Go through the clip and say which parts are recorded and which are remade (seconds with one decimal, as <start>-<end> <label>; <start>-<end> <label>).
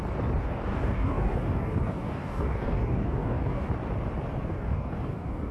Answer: 0.0-0.4 recorded; 0.4-3.7 remade; 3.7-4.5 recorded; 4.5-5.5 remade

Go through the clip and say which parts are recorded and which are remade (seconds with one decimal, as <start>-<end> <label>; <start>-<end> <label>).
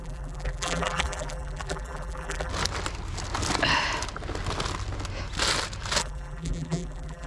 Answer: 0.0-2.5 remade; 2.5-6.0 recorded; 6.0-7.3 remade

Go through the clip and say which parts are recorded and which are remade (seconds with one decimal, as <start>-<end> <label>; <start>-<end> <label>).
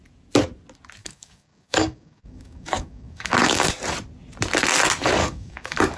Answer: 0.0-1.0 recorded; 1.0-3.7 remade; 3.7-5.2 recorded; 5.2-6.0 remade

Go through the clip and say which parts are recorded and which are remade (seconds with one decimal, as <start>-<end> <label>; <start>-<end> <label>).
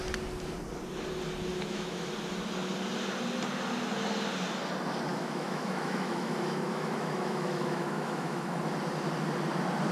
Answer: 0.0-1.5 recorded; 1.5-2.1 remade; 2.1-5.1 recorded; 5.1-8.6 remade; 8.6-9.9 recorded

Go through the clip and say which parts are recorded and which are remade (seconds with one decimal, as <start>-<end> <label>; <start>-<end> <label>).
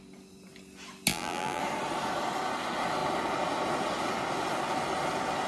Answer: 0.0-1.1 recorded; 1.1-1.6 remade; 1.6-5.5 recorded